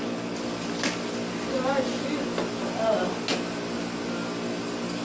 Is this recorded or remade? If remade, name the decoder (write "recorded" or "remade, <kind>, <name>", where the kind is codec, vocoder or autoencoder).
recorded